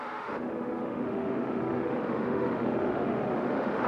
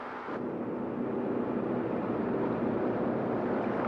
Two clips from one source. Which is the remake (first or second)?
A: first